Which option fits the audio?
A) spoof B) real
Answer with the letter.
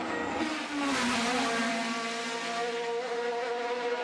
B